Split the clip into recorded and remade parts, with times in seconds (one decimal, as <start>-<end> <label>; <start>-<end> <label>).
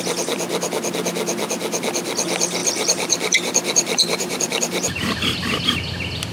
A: 0.0-2.6 recorded; 2.6-5.8 remade; 5.8-6.3 recorded